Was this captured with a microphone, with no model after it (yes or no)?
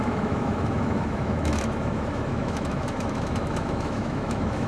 no